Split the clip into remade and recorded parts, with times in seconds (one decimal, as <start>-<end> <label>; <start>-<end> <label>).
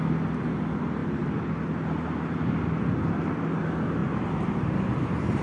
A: 0.0-5.4 recorded